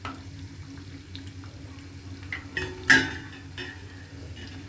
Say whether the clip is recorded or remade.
recorded